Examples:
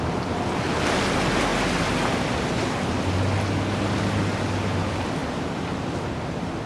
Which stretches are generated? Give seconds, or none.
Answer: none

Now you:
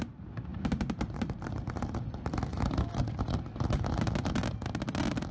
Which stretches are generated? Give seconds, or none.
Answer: 0.5-1.8 (vocoder, BigVGAN v2); 2.5-3.0